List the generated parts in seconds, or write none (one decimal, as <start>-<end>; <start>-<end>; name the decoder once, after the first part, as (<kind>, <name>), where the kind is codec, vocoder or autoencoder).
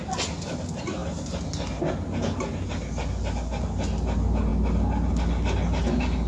none